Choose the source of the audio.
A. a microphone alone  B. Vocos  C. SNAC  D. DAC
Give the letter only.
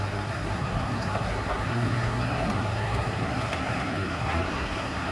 C